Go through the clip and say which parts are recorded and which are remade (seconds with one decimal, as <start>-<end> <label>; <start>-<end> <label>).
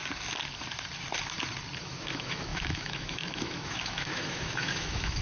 0.0-1.8 recorded; 1.8-5.2 remade